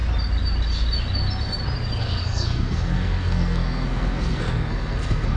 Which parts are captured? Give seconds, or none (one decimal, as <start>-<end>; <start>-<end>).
0.0-2.0